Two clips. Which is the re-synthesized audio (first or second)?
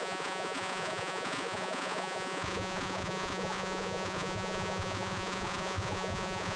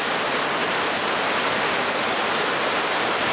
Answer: first